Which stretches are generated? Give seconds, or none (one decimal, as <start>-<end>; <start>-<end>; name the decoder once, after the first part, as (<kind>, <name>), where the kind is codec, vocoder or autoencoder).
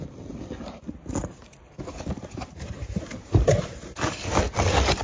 1.4-4.4 (vocoder, BigVGAN v2)